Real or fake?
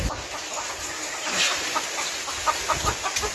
real